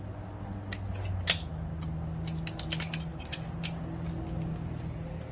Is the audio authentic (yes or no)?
yes